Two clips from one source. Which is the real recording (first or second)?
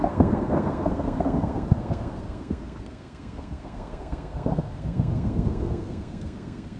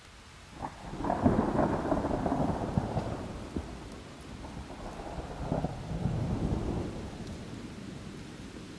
second